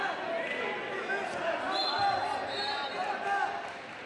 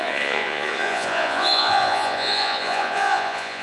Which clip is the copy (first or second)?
second